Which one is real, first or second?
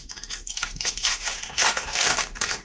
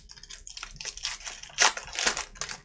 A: second